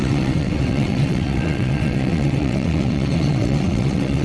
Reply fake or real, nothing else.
fake